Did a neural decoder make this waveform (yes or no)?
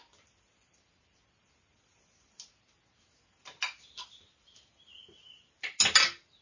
no